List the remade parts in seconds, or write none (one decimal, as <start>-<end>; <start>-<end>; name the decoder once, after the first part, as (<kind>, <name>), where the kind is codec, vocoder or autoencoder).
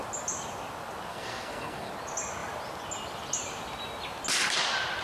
1.1-1.9 (codec, SNAC)